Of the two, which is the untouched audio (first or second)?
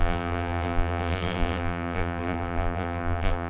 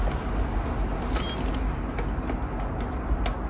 second